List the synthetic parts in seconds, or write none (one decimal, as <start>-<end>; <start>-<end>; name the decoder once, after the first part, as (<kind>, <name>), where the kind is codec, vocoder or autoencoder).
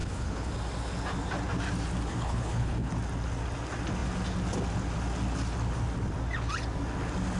0.0-0.5 (codec, HILCodec); 2.1-2.9